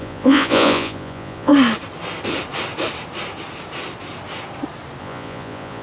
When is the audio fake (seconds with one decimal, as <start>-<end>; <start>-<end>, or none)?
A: 0.0-1.5; 5.0-5.8